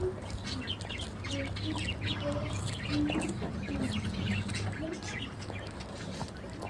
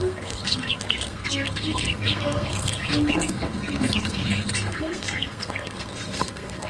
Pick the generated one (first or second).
second